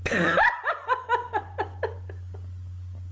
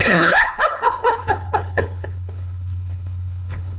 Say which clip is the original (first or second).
first